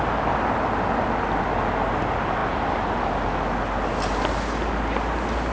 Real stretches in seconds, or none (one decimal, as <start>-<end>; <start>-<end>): 0.0-5.5